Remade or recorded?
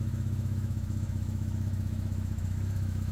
remade